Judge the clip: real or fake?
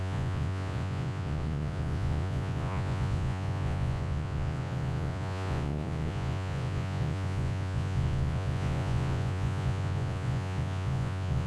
fake